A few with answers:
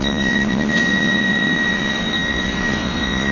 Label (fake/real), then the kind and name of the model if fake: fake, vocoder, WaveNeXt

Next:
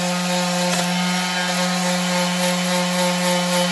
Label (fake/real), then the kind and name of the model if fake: real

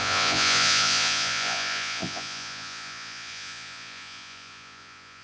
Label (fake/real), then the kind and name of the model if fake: fake, vocoder, Vocos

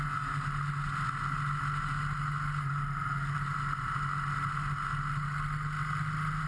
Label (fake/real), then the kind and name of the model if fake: real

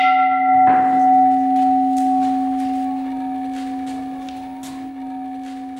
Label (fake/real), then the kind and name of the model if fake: real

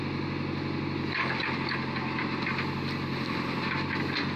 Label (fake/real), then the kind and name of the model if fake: real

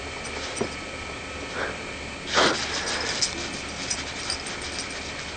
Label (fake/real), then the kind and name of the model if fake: real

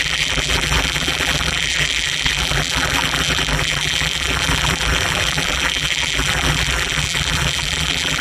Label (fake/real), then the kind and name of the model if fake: fake, vocoder, BigVGAN v2